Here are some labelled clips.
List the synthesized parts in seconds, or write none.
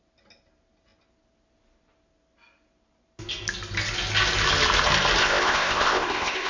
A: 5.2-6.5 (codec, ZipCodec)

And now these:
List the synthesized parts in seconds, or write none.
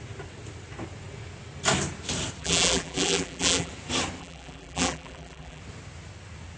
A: 2.4-3.7 (vocoder, BigVGAN v2); 4.2-5.6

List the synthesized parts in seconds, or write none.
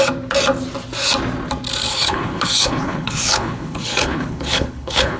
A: 1.9-5.2 (codec, HILCodec)